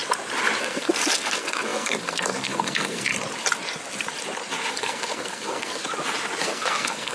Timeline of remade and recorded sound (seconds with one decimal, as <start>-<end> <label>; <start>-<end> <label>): 0.0-0.6 recorded; 0.6-3.1 remade; 3.1-4.7 recorded; 4.7-5.8 remade; 5.8-6.4 recorded; 6.4-7.1 remade